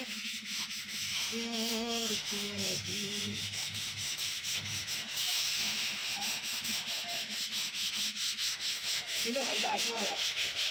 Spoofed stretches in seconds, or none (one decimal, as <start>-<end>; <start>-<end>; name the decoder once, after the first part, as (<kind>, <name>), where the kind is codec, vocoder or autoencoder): 0.0-10.7 (autoencoder, DAC-VAE)